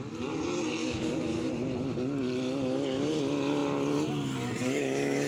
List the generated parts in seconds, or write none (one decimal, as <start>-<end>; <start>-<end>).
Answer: 0.8-1.5; 4.6-5.3